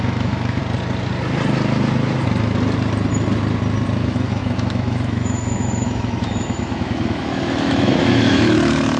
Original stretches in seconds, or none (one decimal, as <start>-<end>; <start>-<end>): 0.6-4.0